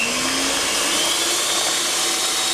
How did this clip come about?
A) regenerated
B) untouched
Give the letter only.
B